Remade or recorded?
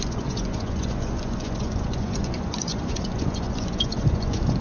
remade